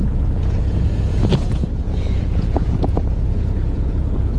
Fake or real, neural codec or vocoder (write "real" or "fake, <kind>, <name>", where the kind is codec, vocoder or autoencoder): fake, vocoder, Vocos